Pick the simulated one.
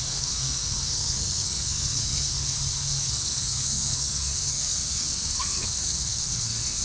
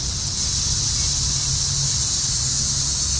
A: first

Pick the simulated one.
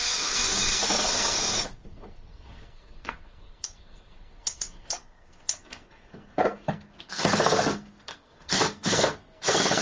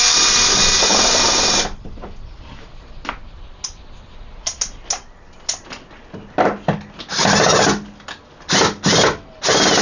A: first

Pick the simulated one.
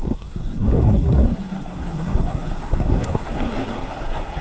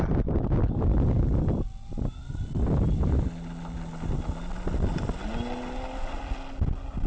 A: first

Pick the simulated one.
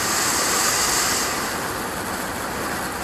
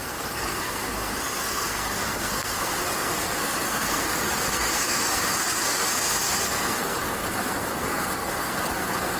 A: second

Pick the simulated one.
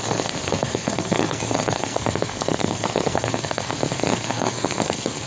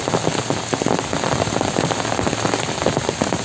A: first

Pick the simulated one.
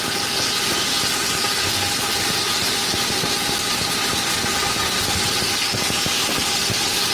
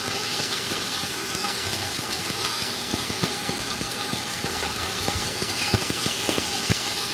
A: second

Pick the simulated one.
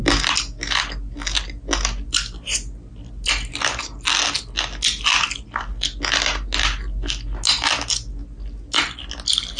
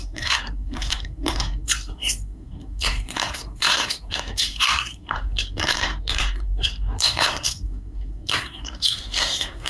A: second